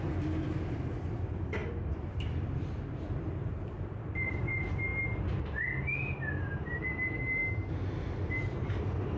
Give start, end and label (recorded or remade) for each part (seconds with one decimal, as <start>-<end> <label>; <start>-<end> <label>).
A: 0.0-4.9 remade; 4.9-6.4 recorded; 6.4-7.4 remade; 7.4-8.3 recorded; 8.3-9.2 remade